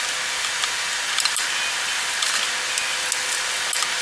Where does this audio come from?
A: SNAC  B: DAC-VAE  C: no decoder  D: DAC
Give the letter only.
C